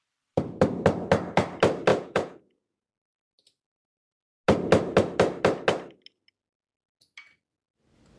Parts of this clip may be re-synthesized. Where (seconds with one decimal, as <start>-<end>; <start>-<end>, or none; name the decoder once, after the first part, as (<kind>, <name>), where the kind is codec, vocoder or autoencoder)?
1.9-2.9 (vocoder, Vocos)